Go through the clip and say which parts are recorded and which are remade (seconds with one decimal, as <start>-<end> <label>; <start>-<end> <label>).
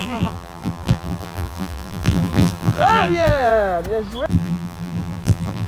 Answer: 0.0-3.5 remade; 3.5-4.3 recorded; 4.3-5.7 remade